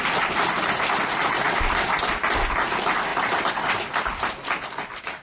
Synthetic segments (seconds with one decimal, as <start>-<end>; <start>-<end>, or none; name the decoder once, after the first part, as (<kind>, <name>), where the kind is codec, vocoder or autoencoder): none